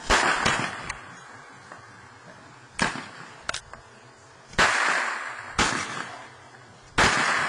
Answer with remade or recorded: recorded